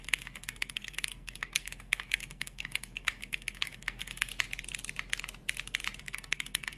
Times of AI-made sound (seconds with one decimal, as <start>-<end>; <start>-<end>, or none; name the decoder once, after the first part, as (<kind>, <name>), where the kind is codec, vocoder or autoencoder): 0.0-4.3 (codec, SNAC); 6.0-6.8